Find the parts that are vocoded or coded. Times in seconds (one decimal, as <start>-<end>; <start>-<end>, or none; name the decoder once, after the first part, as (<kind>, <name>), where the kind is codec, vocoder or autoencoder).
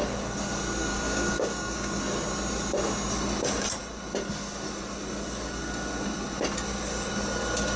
0.9-2.0 (codec, DAC)